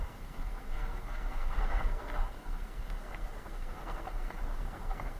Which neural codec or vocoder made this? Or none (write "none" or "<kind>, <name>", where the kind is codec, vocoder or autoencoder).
codec, SNAC